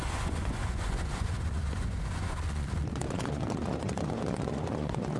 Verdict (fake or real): fake